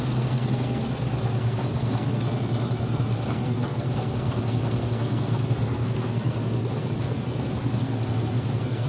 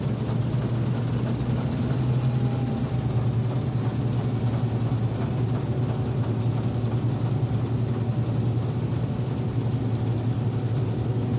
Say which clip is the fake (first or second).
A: first